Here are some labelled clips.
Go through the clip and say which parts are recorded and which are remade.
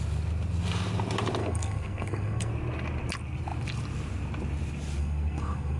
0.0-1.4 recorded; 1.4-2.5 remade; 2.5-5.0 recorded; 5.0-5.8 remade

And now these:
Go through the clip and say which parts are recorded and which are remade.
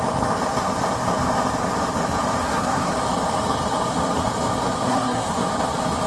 0.0-2.4 recorded; 2.4-2.9 remade; 2.9-4.9 recorded; 4.9-5.4 remade; 5.4-6.1 recorded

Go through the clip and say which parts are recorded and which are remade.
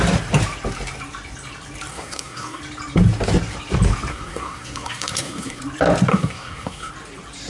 0.0-1.9 recorded; 1.9-2.6 remade; 2.6-4.1 recorded; 4.1-5.6 remade; 5.6-6.1 recorded; 6.1-6.9 remade; 6.9-7.5 recorded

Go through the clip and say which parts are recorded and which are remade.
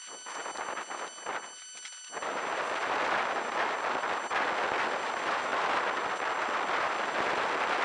0.0-7.8 recorded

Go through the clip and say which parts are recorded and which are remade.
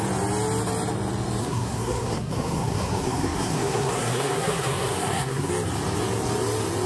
0.0-1.4 recorded; 1.4-5.5 remade; 5.5-6.9 recorded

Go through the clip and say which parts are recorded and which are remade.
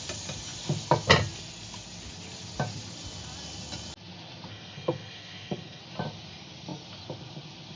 0.0-4.5 recorded; 4.5-5.8 remade; 5.8-7.8 recorded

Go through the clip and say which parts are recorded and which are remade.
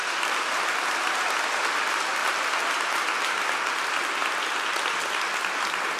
0.0-6.0 recorded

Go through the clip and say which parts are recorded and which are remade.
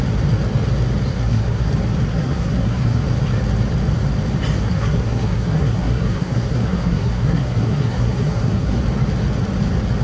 0.0-1.1 recorded; 1.1-1.7 remade; 1.7-2.1 recorded; 2.1-3.0 remade; 3.0-4.6 recorded; 4.6-8.8 remade; 8.8-10.0 recorded